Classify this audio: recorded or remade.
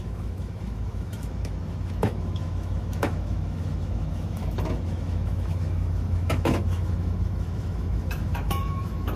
remade